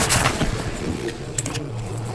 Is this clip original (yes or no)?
no